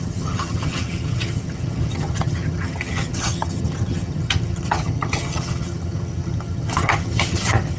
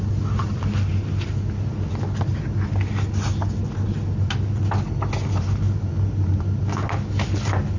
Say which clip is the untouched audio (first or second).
second